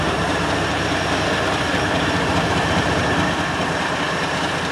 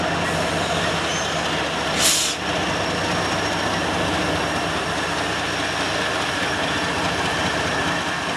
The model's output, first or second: first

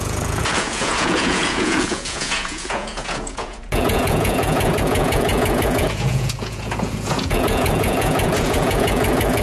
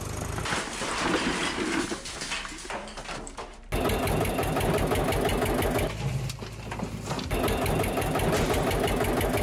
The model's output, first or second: first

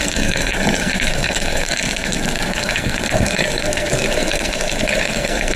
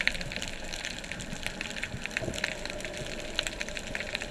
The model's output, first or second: first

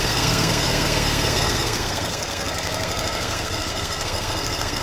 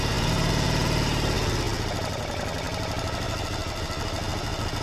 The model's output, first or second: first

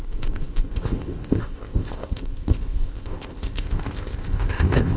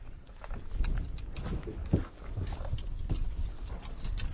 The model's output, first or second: first